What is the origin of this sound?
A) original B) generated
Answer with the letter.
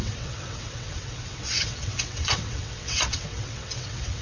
B